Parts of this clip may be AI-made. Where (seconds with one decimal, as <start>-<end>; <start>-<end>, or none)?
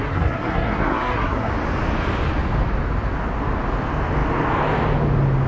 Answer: 0.0-1.5